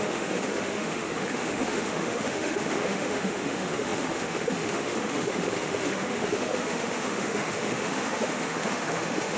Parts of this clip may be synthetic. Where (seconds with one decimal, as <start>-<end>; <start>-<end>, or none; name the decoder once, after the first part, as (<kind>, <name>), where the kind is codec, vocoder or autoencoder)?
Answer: 0.0-9.4 (autoencoder, DAC-VAE)